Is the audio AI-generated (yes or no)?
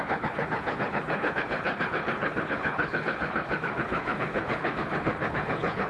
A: yes